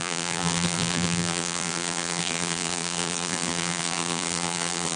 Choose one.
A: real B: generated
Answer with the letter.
B